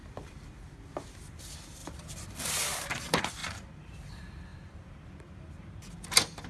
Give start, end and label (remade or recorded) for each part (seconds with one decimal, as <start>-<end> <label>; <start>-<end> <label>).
0.0-6.5 remade